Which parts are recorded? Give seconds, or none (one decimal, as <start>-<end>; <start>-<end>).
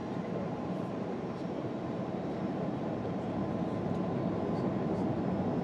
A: 3.4-5.6